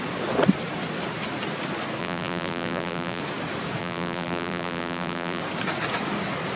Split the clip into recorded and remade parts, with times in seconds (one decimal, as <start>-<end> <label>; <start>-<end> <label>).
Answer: 0.0-2.0 recorded; 2.0-3.2 remade; 3.2-3.8 recorded; 3.8-5.4 remade; 5.4-6.6 recorded